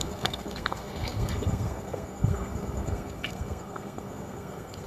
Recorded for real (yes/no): no